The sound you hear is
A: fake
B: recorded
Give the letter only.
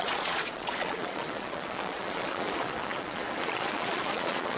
A